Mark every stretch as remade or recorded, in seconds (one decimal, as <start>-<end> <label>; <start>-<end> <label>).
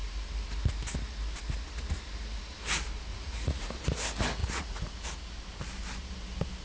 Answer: 0.0-3.1 recorded; 3.1-3.7 remade; 3.7-4.4 recorded; 4.4-4.9 remade; 4.9-6.6 recorded